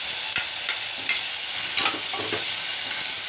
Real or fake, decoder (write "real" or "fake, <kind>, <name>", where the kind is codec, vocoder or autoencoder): real